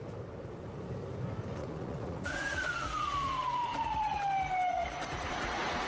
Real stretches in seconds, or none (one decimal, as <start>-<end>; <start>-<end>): 0.0-1.6; 4.2-4.7

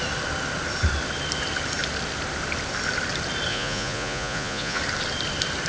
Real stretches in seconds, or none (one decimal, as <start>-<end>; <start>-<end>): 0.0-3.5; 4.8-5.7